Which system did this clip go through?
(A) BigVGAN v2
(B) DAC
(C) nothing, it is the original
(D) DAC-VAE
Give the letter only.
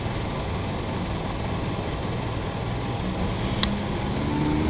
C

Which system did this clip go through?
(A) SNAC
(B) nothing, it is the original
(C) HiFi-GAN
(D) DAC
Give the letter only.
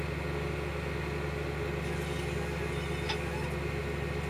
B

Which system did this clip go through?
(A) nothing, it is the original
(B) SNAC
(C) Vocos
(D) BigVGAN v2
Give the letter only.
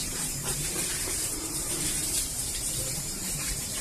D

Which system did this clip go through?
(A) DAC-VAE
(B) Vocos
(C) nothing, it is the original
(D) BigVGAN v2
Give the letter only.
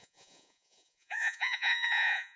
B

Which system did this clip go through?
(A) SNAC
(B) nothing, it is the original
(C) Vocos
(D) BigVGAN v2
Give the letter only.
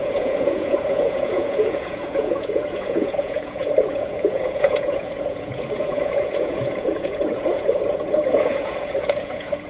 C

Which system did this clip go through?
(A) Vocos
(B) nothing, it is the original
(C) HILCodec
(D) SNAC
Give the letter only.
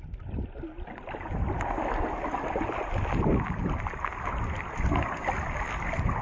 B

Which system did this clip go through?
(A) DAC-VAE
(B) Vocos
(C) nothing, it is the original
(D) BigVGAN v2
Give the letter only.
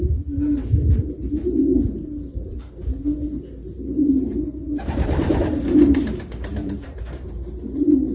D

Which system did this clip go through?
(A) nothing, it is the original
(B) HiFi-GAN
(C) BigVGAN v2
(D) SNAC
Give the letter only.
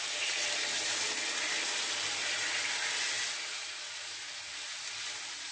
A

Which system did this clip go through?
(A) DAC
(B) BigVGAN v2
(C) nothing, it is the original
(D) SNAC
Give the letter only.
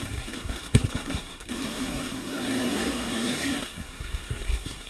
D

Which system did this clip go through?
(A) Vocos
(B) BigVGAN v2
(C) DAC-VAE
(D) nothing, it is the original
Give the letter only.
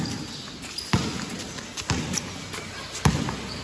D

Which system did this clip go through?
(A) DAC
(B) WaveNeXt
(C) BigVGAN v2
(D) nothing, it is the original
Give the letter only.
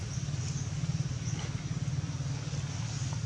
D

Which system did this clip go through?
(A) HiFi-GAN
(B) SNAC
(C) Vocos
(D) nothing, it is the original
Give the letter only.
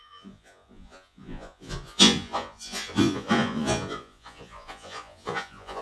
C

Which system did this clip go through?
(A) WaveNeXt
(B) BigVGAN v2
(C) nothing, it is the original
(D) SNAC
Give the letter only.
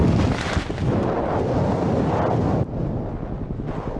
C